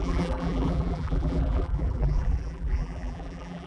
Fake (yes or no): yes